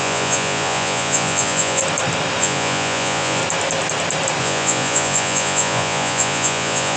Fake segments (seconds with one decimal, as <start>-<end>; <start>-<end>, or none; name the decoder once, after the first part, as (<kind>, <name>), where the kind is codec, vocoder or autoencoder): 0.0-1.8 (vocoder, Vocos); 2.4-3.4; 4.4-7.0